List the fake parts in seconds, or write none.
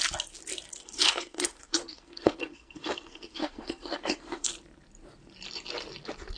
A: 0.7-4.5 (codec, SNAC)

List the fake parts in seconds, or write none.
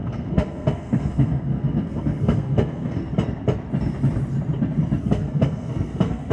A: 0.0-3.0 (codec, SNAC); 5.0-6.3